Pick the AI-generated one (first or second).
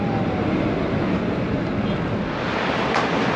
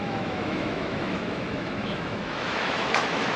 second